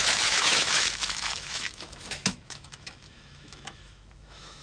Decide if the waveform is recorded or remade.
remade